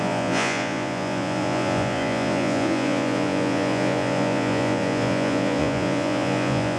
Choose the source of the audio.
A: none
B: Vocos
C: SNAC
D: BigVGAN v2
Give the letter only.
B